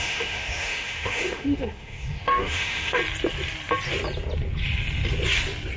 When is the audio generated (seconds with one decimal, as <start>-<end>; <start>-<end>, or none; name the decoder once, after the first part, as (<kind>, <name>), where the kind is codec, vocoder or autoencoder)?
0.0-3.0 (autoencoder, DAC-VAE)

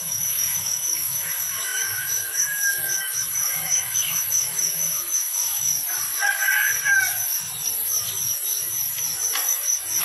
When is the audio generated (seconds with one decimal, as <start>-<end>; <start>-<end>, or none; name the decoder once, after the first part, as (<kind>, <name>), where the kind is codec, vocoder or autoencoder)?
0.0-5.7 (autoencoder, DAC-VAE)

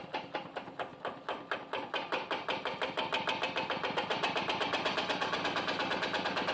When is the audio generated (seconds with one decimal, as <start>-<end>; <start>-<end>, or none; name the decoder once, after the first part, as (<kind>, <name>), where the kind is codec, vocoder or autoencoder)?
none

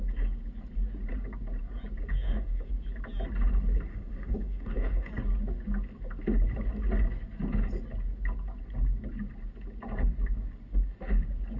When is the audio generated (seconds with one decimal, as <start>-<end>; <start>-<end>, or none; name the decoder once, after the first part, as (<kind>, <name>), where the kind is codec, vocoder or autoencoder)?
2.1-2.7 (autoencoder, DAC-VAE); 3.9-5.1

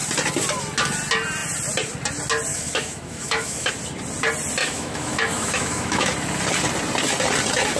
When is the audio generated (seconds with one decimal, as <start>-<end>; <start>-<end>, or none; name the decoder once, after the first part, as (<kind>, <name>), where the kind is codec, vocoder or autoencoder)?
2.5-3.7 (autoencoder, DAC-VAE); 4.6-6.1

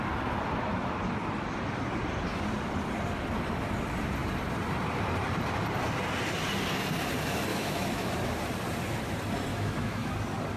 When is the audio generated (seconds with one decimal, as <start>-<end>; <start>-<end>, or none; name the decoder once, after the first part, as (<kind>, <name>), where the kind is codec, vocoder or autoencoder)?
7.5-8.1 (autoencoder, DAC-VAE); 9.5-10.1

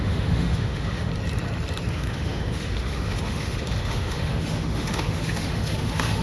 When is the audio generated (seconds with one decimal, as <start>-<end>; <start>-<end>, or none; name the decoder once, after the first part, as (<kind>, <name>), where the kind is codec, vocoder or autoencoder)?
0.0-1.1 (autoencoder, DAC-VAE); 1.9-6.2

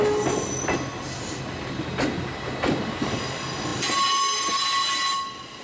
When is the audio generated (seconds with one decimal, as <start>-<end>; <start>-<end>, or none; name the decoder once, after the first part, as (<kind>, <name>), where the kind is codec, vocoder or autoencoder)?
none